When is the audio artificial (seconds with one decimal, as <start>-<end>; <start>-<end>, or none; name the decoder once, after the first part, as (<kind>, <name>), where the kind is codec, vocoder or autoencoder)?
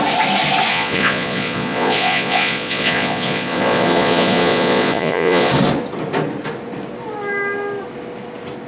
0.7-5.5 (vocoder, Vocos)